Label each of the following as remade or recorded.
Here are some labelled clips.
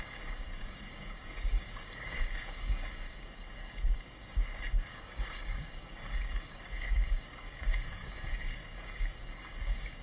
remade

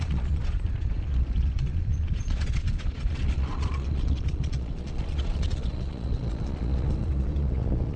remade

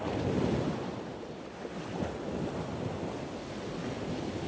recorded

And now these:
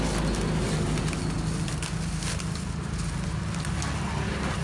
recorded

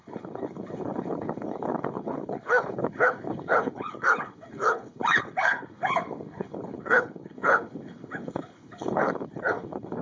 remade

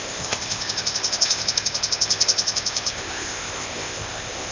remade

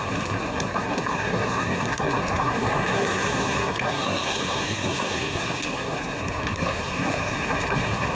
remade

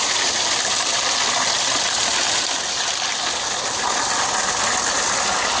recorded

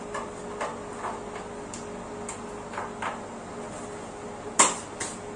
recorded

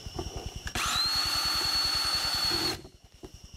remade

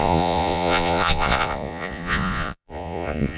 remade